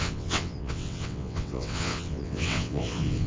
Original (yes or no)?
no